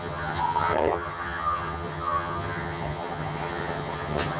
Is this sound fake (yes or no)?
yes